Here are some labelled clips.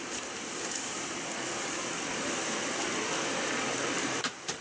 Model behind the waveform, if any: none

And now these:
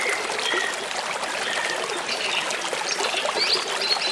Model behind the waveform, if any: none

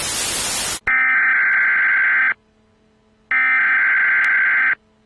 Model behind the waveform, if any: none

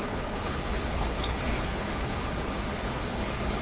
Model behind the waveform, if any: codec, HILCodec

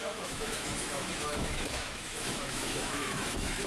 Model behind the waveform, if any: autoencoder, DAC-VAE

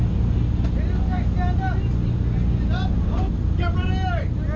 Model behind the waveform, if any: none